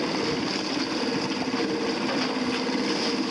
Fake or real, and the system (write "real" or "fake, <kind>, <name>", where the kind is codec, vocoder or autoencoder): real